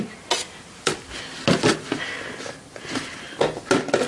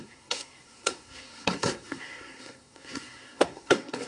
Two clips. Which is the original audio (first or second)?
first